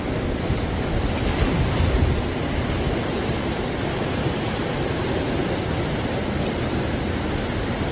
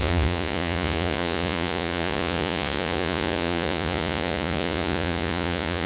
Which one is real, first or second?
first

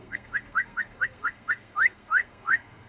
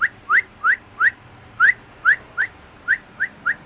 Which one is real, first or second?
second